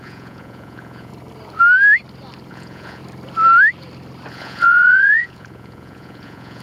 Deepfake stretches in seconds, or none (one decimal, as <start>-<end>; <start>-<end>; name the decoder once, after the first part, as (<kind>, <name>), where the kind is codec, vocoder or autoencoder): 0.0-1.1 (vocoder, Vocos); 2.5-3.0; 4.3-6.6